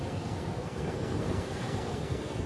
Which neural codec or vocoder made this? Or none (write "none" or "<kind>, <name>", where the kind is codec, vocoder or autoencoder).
codec, SNAC